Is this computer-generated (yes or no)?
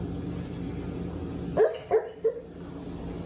no